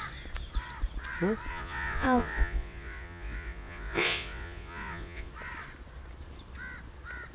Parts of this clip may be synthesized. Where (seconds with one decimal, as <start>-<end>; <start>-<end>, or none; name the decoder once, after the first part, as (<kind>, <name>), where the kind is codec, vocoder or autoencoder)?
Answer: 1.5-5.3 (vocoder, Vocos)